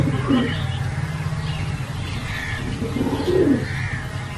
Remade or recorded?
recorded